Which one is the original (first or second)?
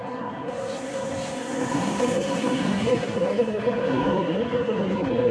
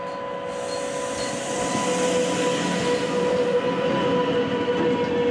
second